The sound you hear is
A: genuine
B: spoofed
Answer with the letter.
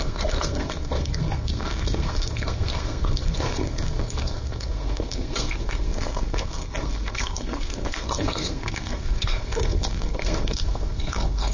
B